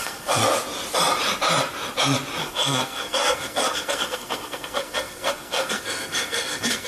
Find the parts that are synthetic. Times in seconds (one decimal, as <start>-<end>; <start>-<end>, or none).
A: 0.0-0.4; 2.4-6.9